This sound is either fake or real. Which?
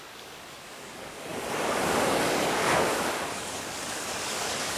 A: fake